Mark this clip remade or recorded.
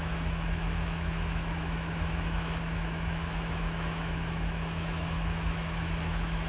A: remade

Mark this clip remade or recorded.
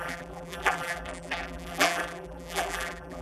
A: remade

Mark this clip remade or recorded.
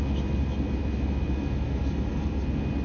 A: recorded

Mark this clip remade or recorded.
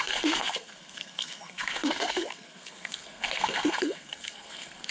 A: remade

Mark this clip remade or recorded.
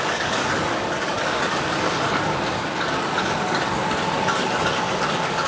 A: remade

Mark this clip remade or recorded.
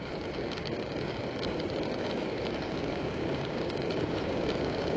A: remade